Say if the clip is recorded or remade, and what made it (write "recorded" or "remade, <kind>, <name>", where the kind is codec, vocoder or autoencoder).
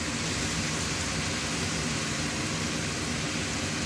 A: recorded